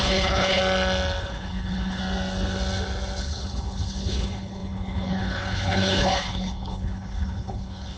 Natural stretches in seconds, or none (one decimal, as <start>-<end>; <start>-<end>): 0.6-1.2; 2.0-3.2